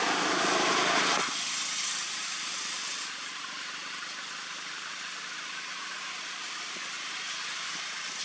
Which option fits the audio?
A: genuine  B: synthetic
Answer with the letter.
B